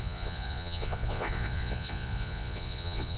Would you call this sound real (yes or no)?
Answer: no